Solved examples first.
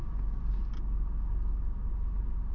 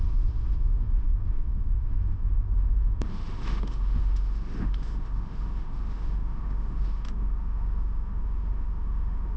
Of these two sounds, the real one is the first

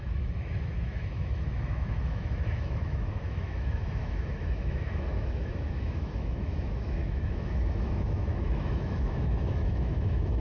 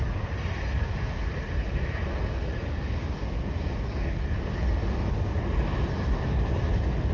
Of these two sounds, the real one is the second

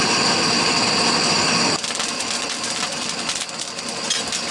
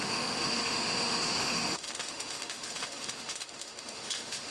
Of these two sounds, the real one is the first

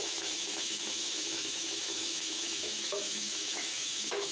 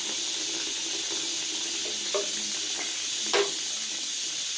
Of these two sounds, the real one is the second